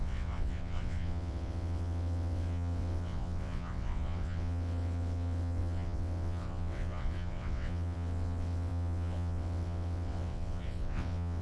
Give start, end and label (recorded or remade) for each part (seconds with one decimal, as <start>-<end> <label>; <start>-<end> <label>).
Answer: 0.0-11.4 remade